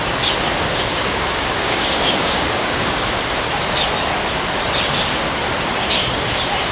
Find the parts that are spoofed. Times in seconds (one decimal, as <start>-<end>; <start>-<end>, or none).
0.9-3.1